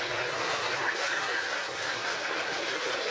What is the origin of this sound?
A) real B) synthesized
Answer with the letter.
B